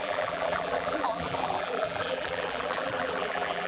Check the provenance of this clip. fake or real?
fake